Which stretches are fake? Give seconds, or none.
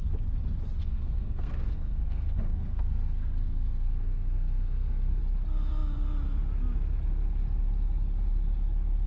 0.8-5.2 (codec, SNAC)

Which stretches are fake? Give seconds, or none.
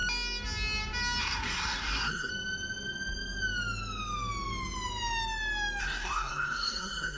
1.2-2.3 (codec, SNAC); 5.8-7.2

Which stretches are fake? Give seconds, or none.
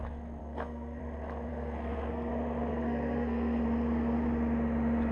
0.4-1.0 (codec, SNAC); 1.5-2.3; 2.7-3.6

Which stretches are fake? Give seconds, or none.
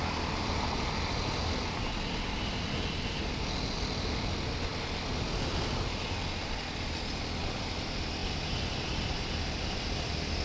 none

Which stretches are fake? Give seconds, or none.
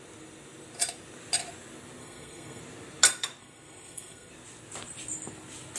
2.0-2.6 (codec, SNAC); 3.4-4.3